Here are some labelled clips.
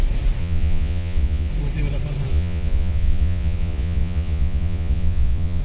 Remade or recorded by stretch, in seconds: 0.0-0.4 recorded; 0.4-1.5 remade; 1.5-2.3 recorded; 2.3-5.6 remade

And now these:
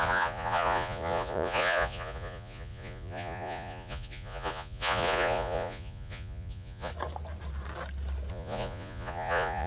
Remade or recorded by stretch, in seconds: 0.0-6.9 remade; 6.9-8.3 recorded; 8.3-9.7 remade

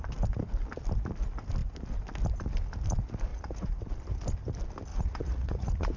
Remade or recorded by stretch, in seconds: 0.0-3.3 recorded; 3.3-3.9 remade; 3.9-4.9 recorded; 4.9-6.0 remade

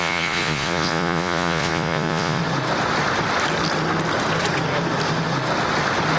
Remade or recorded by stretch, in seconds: 0.0-2.4 remade; 2.4-6.2 recorded

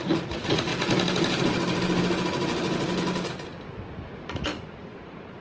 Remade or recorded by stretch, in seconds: 0.0-0.7 remade; 0.7-3.9 recorded; 3.9-5.4 remade